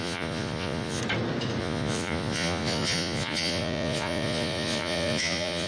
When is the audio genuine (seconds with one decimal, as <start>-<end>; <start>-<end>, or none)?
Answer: 1.0-1.6